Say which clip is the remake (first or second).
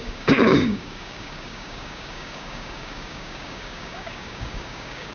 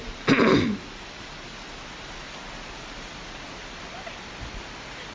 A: first